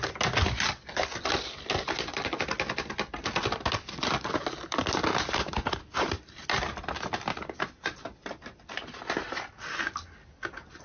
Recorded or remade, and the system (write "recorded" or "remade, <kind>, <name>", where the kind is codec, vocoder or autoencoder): recorded